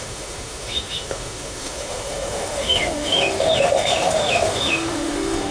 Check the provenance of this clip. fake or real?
fake